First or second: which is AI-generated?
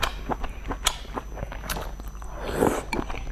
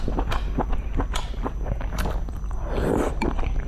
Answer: second